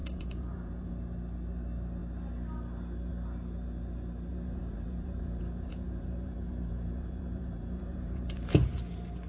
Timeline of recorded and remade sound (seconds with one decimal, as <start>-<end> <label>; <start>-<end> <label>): 0.0-0.9 remade; 0.9-4.3 recorded; 4.3-8.7 remade; 8.7-9.3 recorded